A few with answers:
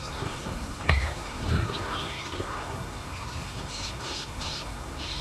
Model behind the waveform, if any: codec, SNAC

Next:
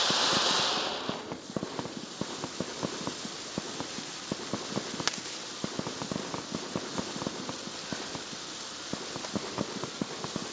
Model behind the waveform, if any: none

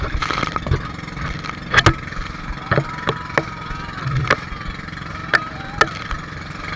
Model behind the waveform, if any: none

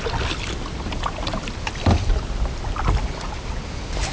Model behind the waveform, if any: none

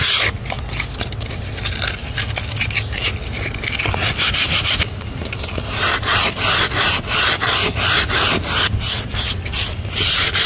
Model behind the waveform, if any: none